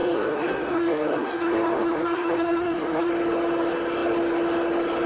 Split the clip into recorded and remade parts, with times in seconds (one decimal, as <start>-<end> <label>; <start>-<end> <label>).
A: 0.0-3.1 remade; 3.1-5.1 recorded